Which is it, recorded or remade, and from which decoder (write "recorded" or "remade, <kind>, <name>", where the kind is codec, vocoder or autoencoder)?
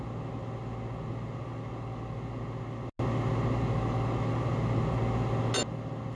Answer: recorded